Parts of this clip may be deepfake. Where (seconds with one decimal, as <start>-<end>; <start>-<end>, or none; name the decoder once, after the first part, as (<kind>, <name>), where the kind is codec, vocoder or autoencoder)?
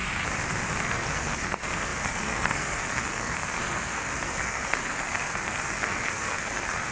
0.8-6.9 (codec, SNAC)